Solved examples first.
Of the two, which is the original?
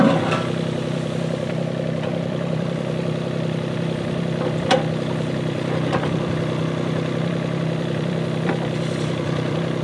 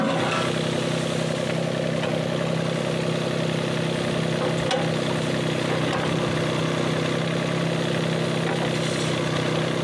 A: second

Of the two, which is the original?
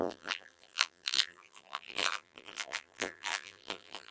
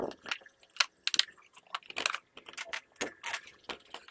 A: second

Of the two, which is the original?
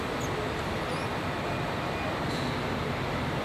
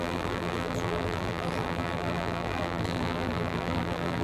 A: first